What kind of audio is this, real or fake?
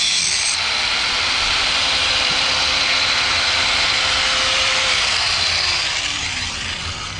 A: fake